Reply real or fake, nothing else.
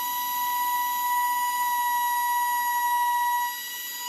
real